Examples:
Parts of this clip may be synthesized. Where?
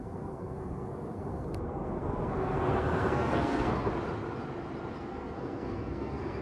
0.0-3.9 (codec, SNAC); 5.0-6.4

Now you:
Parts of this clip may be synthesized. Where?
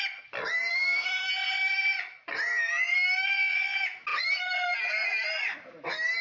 0.7-1.3 (autoencoder, DAC-VAE)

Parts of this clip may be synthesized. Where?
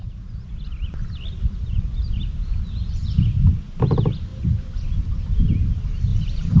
4.3-5.0 (vocoder, BigVGAN v2)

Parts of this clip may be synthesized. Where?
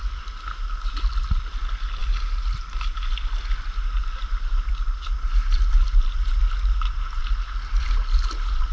none